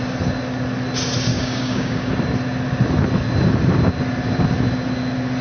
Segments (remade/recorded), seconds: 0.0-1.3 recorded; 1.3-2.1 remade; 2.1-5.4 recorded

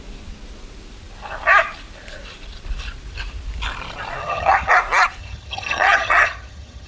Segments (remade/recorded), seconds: 0.0-4.2 recorded; 4.2-4.7 remade; 4.7-5.2 recorded; 5.2-6.9 remade

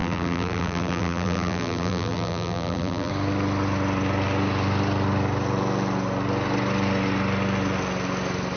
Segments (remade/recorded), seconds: 0.0-3.1 remade; 3.1-8.6 recorded

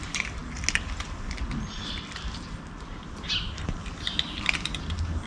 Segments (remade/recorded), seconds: 0.0-5.3 recorded

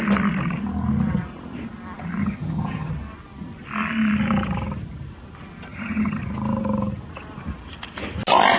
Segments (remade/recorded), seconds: 0.0-2.2 recorded; 2.2-2.9 remade; 2.9-5.7 recorded; 5.7-6.2 remade; 6.2-8.6 recorded

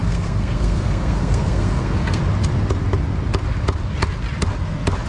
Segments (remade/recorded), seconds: 0.0-2.2 remade; 2.2-5.1 recorded

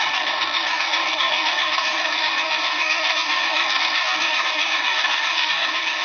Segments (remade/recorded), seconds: 0.0-6.0 remade